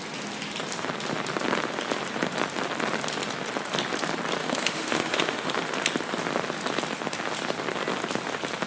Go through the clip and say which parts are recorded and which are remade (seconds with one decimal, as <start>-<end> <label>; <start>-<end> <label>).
0.0-4.4 recorded; 4.4-5.5 remade; 5.5-8.7 recorded